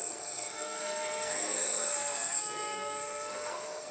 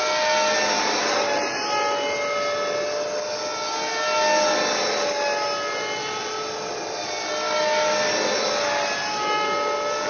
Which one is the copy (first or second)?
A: first